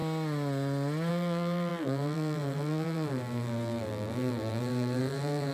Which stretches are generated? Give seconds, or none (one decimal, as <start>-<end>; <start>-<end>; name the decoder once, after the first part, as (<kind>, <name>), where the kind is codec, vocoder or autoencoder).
1.1-5.5 (vocoder, BigVGAN v2)